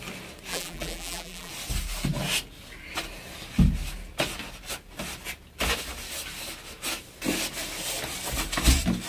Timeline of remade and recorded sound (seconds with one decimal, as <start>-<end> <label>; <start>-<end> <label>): 0.0-0.5 recorded; 0.5-1.5 remade; 1.5-9.1 recorded